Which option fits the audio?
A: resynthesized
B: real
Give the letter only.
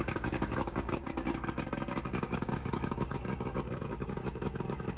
A